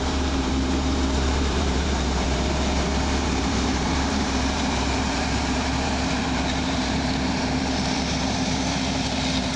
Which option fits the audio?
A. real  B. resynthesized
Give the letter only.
B